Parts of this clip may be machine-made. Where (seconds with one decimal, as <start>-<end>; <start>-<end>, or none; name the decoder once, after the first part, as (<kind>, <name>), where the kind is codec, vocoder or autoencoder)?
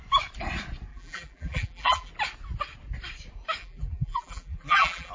0.9-2.1 (vocoder, BigVGAN v2); 3.6-5.1